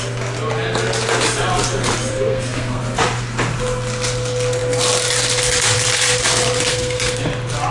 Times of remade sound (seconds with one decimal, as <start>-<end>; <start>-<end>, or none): 2.1-2.8; 6.7-7.2